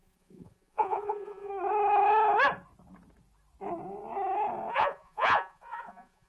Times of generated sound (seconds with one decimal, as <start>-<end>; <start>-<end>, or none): 0.0-1.5; 4.7-6.3

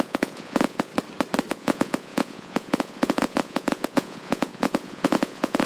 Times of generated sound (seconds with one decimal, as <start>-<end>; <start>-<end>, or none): 0.0-0.9; 1.5-5.7

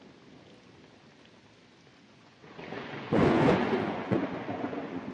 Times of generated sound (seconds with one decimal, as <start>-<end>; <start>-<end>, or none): 1.9-5.1

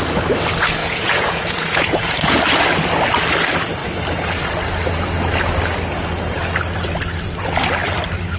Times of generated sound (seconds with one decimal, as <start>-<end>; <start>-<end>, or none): 0.8-2.4

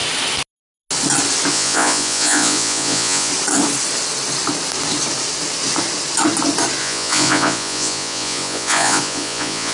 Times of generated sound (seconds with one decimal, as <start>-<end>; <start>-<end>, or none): 1.5-3.3; 6.8-9.7

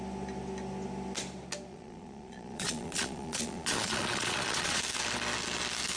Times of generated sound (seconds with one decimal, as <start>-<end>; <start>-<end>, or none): 1.7-4.8